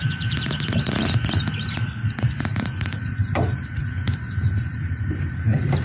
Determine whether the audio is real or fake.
fake